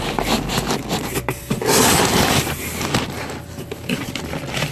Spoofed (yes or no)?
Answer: no